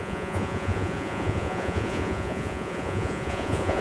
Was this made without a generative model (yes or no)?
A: no